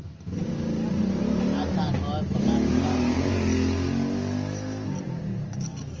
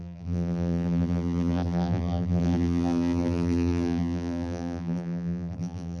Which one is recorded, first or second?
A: first